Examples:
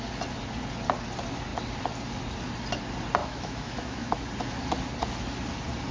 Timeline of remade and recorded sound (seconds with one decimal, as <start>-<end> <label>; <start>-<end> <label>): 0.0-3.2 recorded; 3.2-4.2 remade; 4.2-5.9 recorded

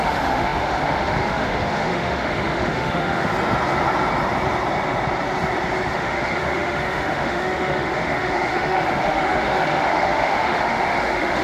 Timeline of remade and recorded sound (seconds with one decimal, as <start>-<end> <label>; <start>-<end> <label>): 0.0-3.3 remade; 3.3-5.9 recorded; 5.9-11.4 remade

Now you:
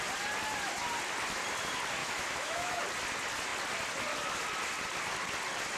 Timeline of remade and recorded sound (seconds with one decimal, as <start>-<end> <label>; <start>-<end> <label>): 0.0-2.0 recorded; 2.0-2.8 remade; 2.8-5.8 recorded